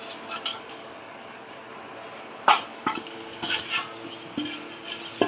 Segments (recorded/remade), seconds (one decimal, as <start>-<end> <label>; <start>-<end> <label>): 0.0-0.5 recorded; 0.5-1.7 remade; 1.7-2.7 recorded; 2.7-3.6 remade; 3.6-5.3 recorded